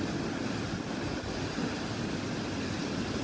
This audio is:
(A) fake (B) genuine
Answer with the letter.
B